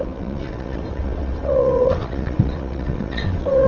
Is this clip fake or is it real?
fake